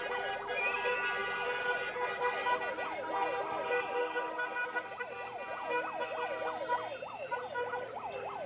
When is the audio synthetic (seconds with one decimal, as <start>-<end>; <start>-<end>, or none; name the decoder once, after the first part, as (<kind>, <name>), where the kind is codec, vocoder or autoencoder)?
none